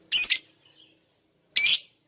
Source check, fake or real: real